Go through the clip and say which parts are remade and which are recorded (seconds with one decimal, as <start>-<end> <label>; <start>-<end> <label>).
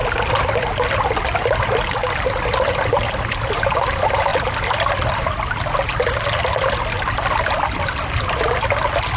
0.0-9.2 recorded